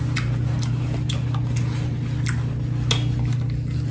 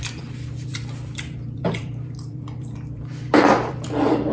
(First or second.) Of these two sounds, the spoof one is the second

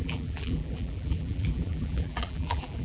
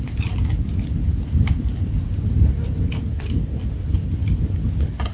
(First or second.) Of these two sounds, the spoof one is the first